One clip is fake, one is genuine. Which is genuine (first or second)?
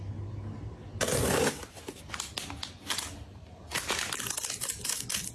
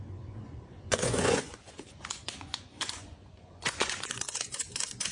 first